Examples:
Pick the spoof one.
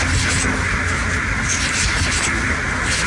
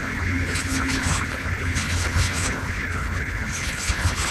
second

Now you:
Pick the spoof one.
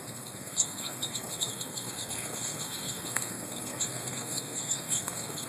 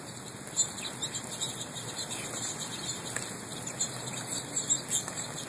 first